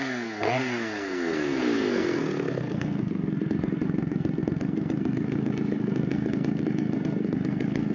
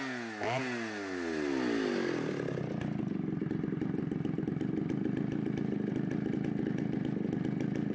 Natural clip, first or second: second